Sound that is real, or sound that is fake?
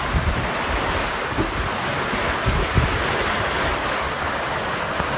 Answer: real